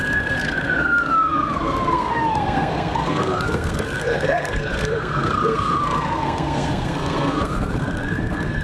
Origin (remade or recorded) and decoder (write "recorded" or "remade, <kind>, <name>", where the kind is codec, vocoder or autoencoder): remade, codec, SNAC